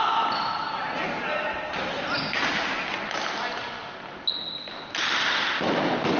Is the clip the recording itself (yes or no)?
yes